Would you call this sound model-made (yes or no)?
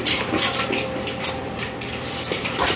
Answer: yes